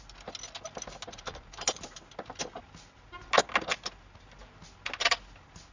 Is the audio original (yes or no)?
yes